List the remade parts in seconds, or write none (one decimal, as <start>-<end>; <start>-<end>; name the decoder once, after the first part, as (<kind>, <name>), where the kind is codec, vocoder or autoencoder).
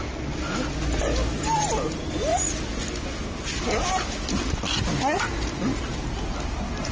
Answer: none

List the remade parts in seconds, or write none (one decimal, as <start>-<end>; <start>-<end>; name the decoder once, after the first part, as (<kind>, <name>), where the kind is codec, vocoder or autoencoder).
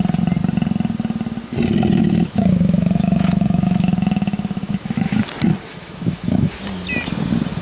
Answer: 2.0-5.2 (autoencoder, DAC-VAE); 5.7-6.5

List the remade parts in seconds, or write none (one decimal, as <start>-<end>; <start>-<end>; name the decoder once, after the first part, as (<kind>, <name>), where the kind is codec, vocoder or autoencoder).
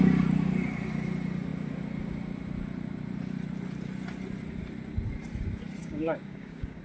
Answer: 5.8-6.8 (codec, DAC)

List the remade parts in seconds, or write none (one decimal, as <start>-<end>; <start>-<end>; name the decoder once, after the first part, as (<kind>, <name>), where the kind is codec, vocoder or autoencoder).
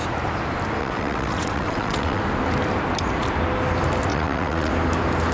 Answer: 0.8-2.2 (vocoder, WaveNeXt); 4.1-4.7